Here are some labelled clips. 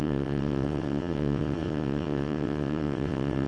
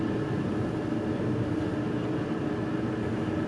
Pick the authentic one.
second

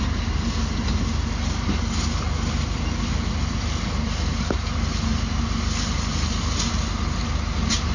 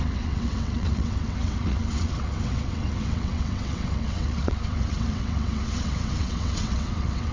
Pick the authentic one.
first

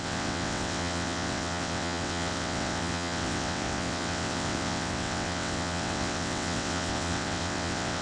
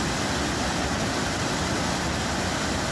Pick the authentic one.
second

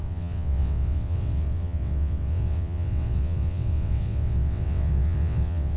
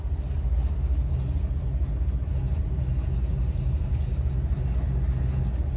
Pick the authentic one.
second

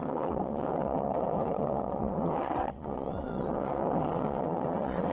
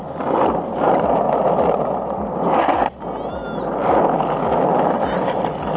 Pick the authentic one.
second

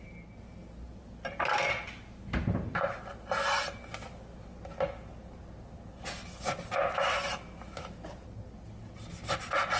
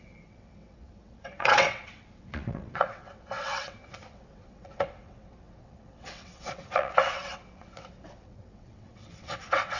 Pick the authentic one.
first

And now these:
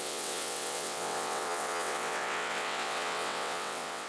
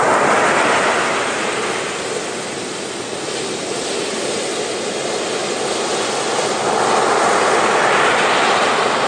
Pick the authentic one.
second